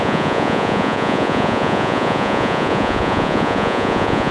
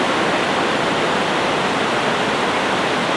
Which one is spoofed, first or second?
first